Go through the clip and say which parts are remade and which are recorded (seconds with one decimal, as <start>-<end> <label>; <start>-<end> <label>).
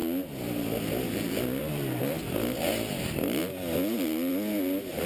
0.0-5.1 recorded